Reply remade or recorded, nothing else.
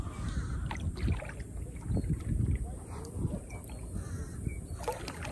recorded